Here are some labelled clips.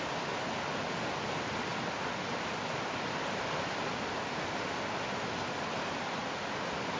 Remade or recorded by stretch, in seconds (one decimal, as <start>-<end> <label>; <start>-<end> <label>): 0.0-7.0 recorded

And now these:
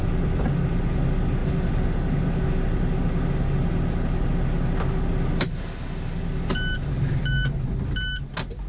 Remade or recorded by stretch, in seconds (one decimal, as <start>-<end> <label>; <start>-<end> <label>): 0.0-8.7 recorded

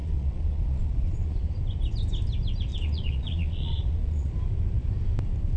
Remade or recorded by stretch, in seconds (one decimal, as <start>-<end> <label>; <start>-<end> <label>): 0.0-1.4 remade; 1.4-2.7 recorded; 2.7-4.3 remade; 4.3-5.6 recorded

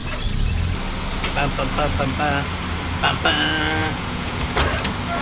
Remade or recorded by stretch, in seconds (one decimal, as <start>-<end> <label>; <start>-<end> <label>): 0.0-3.8 recorded; 3.8-4.4 remade; 4.4-5.2 recorded

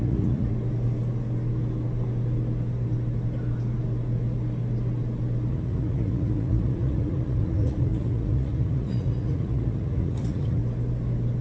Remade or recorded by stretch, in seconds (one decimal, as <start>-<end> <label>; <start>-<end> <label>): 0.0-0.5 remade; 0.5-5.5 recorded; 5.5-10.6 remade; 10.6-11.4 recorded

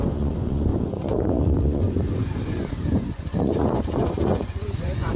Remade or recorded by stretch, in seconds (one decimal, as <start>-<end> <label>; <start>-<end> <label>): 0.0-5.2 remade

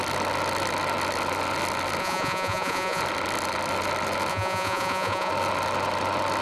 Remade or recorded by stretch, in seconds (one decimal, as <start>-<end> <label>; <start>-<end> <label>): 0.0-2.0 recorded; 2.0-3.0 remade; 3.0-4.3 recorded; 4.3-5.3 remade; 5.3-6.4 recorded